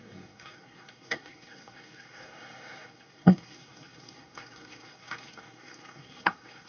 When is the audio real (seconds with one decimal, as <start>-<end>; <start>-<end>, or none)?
none